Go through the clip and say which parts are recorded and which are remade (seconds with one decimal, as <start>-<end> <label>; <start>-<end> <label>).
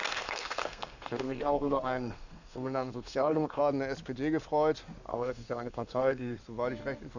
0.0-3.6 remade; 3.6-5.1 recorded; 5.1-6.4 remade; 6.4-7.2 recorded